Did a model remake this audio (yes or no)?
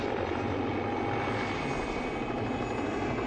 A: no